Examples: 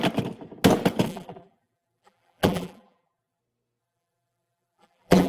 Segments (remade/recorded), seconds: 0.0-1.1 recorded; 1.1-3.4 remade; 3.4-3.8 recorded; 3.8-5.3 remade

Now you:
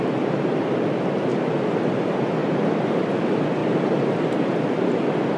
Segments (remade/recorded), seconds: 0.0-2.4 recorded; 2.4-2.9 remade; 2.9-5.4 recorded

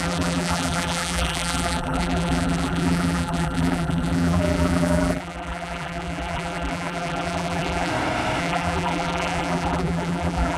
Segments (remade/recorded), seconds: 0.0-7.9 remade; 7.9-8.4 recorded; 8.4-10.6 remade